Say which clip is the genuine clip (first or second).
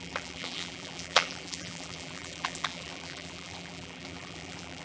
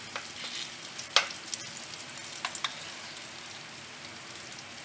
second